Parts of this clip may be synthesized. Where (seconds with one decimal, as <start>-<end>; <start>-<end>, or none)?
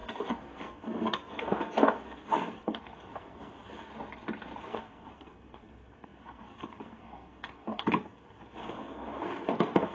0.0-3.9; 4.6-9.9